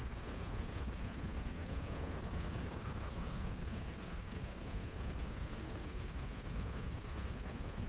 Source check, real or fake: fake